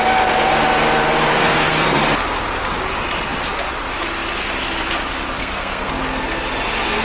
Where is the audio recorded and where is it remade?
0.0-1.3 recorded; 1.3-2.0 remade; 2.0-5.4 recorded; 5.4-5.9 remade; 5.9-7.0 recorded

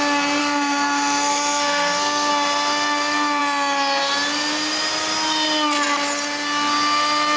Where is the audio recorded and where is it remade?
0.0-0.4 recorded; 0.4-2.3 remade; 2.3-7.4 recorded

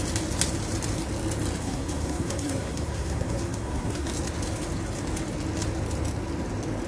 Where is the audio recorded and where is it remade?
0.0-1.6 recorded; 1.6-4.1 remade; 4.1-6.9 recorded